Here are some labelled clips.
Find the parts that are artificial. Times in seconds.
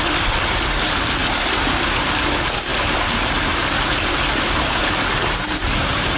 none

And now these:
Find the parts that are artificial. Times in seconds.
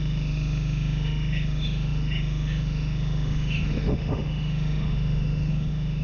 0.0-6.0 (autoencoder, DAC-VAE)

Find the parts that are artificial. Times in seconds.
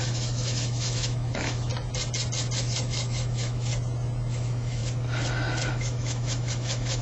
0.0-1.7 (autoencoder, DAC-VAE); 2.6-3.7; 4.3-4.8; 5.7-7.0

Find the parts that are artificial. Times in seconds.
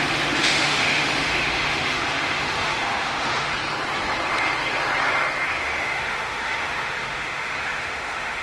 0.0-3.5 (autoencoder, DAC-VAE); 5.6-8.4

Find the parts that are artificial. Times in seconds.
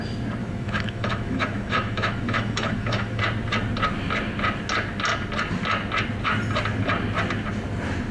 0.4-3.2 (autoencoder, DAC-VAE)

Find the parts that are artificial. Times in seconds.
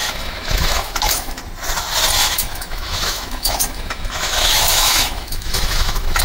0.0-1.4 (autoencoder, DAC-VAE); 2.2-6.2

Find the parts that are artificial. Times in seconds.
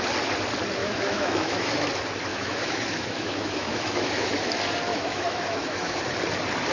0.8-1.9 (autoencoder, DAC-VAE); 2.3-4.3; 4.9-6.0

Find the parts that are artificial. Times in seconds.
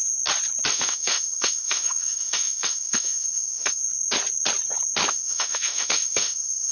0.7-3.8 (autoencoder, DAC-VAE); 5.1-6.7